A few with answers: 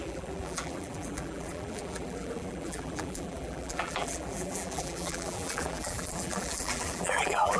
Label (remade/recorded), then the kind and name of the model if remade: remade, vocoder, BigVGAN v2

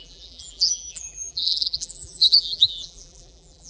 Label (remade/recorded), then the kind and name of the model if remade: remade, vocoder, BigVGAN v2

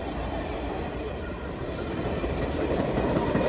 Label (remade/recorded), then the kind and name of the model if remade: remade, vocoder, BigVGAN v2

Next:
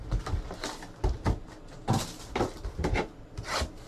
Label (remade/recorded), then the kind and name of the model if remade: recorded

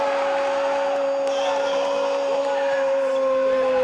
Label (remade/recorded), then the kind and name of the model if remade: recorded